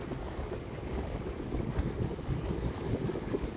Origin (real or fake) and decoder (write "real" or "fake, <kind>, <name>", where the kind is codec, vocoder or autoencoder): fake, codec, DAC